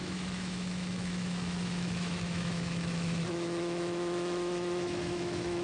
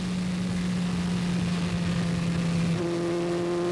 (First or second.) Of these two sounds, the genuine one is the second